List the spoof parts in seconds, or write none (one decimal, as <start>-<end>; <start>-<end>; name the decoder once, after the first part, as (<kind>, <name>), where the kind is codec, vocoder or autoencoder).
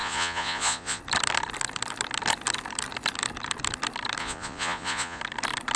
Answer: 0.0-1.0 (vocoder, Vocos); 4.2-5.2